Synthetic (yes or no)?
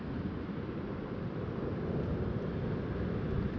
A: no